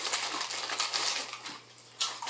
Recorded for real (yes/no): yes